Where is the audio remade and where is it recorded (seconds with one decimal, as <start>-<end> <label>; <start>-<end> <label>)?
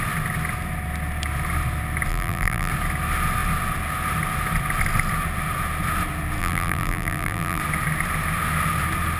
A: 0.0-2.1 recorded; 2.1-2.7 remade; 2.7-6.4 recorded; 6.4-7.6 remade; 7.6-9.2 recorded